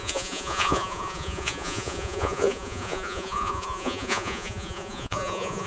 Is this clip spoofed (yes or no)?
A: yes